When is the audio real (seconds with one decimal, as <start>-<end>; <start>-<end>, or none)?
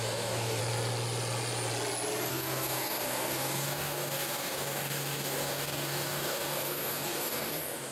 0.6-2.3